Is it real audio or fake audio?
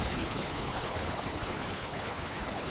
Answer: fake